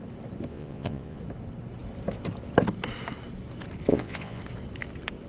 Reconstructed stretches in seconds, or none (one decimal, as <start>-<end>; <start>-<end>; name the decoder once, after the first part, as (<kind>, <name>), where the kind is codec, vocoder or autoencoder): 0.5-1.2 (vocoder, Vocos); 3.9-4.4